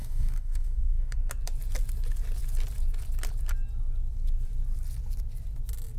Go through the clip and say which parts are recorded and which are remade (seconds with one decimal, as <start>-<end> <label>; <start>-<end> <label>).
0.0-1.3 remade; 1.3-6.0 recorded